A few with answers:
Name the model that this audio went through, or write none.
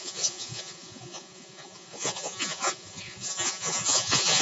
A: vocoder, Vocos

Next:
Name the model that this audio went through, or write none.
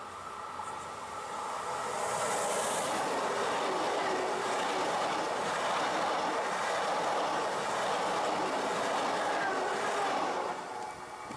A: none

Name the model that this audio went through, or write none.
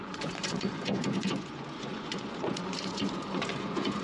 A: vocoder, Vocos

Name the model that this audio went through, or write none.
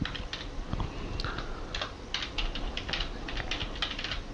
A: none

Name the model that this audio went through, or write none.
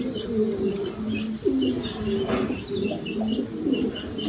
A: none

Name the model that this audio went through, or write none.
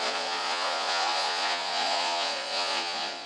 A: vocoder, Vocos